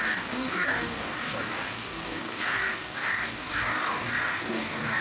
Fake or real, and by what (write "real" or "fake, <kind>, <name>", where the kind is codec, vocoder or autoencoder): fake, codec, DAC